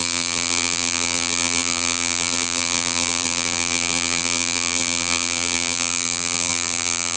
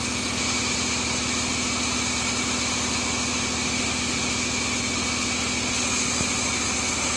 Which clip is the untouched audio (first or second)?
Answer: second